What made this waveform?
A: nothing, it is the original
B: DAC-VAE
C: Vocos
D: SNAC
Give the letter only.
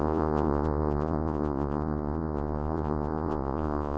C